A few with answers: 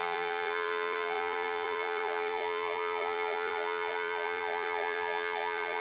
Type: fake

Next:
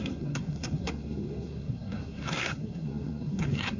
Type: fake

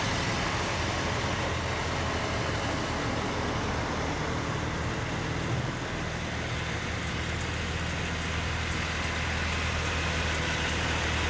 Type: real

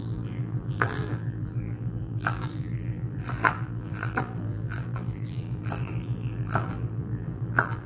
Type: fake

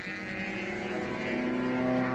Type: real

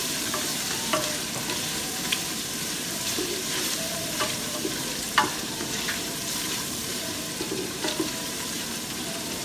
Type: fake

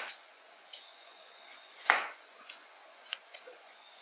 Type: fake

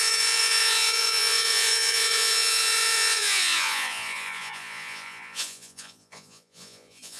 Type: fake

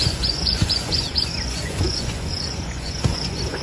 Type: fake